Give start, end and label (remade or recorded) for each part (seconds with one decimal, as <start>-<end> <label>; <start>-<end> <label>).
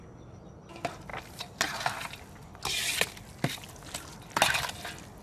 0.0-5.2 recorded